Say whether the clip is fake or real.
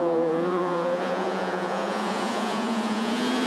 fake